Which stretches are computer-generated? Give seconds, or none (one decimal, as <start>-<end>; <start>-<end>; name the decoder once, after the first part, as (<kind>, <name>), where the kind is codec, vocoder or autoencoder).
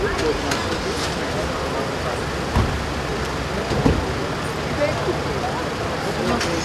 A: none